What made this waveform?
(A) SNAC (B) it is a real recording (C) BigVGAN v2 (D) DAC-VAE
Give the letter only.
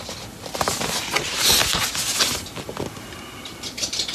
B